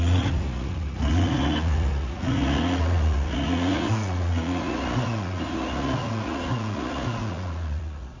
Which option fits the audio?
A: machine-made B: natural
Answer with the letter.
A